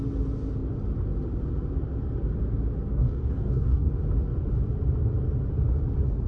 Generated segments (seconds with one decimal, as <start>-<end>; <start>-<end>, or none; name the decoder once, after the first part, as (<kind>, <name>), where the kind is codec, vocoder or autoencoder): 2.9-3.9 (codec, DAC)